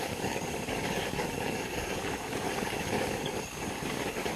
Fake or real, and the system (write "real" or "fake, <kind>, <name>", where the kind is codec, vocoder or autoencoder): fake, codec, DAC